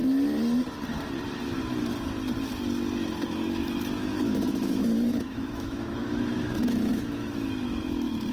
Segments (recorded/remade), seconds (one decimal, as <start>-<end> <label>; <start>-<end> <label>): 0.0-3.3 recorded; 3.3-8.3 remade